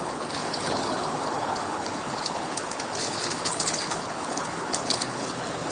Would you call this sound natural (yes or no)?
no